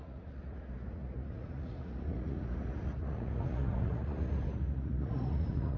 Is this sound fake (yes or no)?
yes